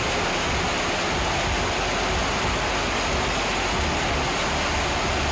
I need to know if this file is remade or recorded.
recorded